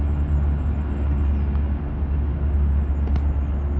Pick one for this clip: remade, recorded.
recorded